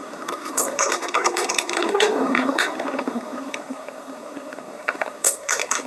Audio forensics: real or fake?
fake